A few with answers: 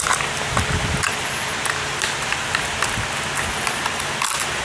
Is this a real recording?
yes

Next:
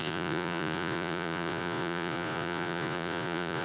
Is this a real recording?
no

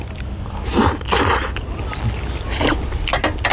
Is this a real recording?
yes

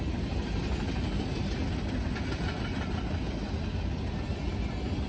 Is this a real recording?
yes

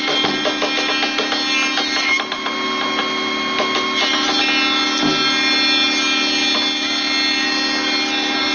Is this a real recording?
yes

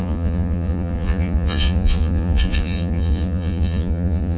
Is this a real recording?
no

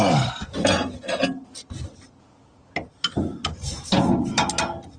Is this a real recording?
yes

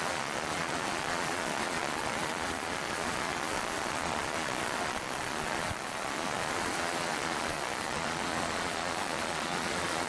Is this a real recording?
no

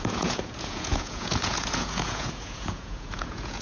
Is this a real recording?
no